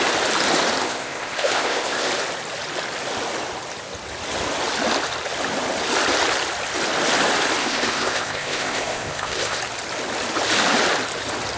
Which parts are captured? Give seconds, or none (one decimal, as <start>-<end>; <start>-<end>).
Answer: 0.0-0.8; 2.1-7.6; 9.6-11.6